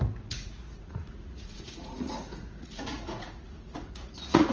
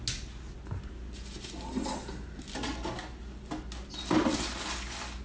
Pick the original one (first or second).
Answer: second